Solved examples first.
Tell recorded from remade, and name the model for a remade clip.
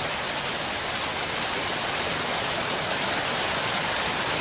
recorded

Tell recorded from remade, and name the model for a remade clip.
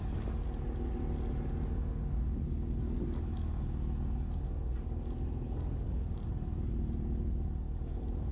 recorded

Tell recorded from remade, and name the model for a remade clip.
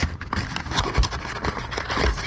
recorded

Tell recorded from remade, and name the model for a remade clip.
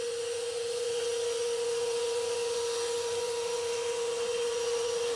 remade, vocoder, Vocos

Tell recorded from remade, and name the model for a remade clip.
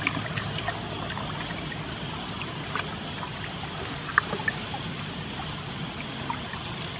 recorded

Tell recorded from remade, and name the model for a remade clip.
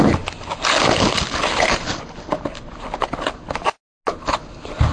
recorded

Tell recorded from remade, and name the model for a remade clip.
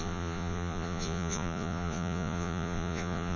remade, vocoder, Vocos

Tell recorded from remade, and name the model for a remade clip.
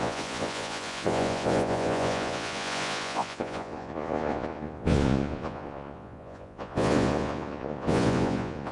remade, vocoder, Vocos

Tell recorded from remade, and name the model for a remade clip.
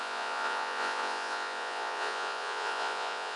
remade, vocoder, Vocos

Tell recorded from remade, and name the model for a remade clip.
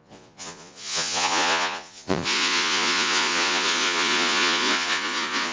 remade, vocoder, Vocos